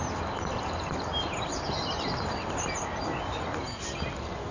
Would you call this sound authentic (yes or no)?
yes